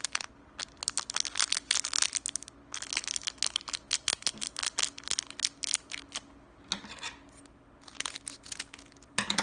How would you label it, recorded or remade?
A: recorded